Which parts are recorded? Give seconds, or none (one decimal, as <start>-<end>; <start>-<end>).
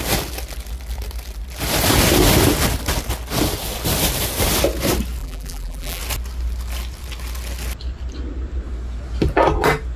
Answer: 0.0-5.2; 6.0-10.0